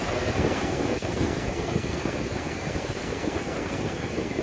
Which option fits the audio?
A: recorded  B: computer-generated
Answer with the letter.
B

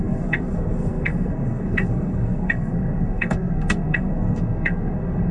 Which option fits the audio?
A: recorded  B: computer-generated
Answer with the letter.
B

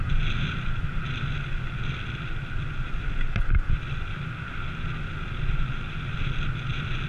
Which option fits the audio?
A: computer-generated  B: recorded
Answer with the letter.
B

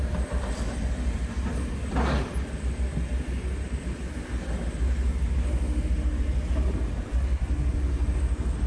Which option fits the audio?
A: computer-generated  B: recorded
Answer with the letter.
B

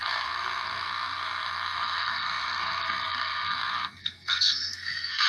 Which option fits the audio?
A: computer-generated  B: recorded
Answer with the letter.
A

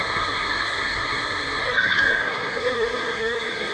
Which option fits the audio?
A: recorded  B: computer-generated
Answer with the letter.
B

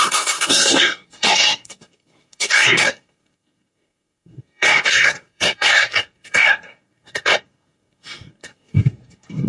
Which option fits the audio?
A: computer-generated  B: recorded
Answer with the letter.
A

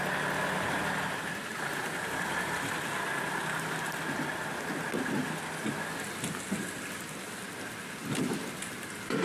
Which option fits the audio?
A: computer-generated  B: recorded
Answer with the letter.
B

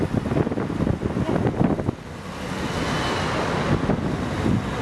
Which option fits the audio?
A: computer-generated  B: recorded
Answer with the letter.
B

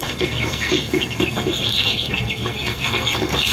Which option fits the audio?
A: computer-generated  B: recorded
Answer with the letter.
A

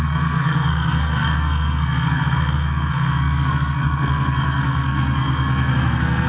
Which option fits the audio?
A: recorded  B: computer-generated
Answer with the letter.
B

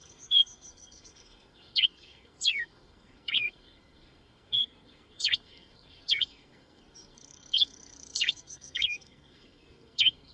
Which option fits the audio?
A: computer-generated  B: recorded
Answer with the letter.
A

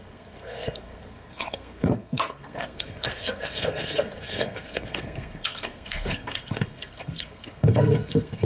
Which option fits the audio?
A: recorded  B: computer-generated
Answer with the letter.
B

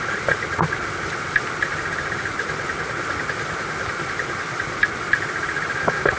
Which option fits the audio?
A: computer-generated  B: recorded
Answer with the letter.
B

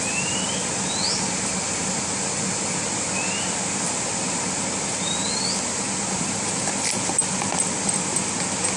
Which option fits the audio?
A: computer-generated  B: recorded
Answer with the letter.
B